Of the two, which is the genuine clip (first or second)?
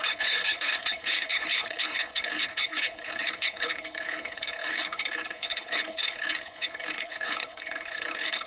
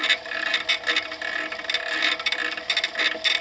second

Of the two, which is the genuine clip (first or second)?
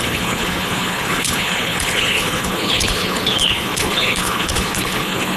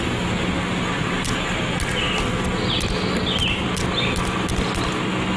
second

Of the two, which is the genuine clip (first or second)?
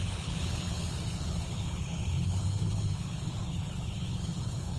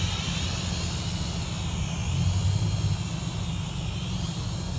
second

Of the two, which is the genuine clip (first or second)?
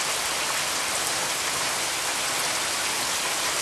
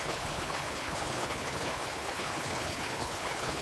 first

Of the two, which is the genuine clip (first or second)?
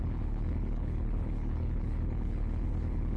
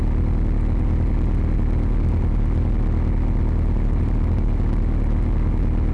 second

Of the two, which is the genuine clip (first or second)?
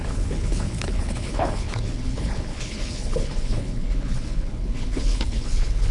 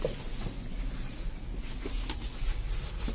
second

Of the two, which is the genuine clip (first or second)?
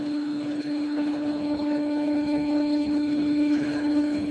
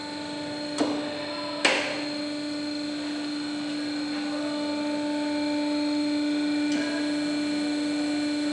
second